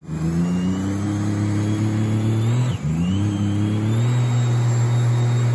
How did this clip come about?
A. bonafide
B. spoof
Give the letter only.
A